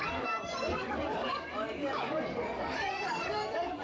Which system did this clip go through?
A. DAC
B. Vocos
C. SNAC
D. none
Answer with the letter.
A